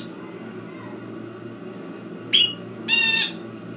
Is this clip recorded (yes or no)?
yes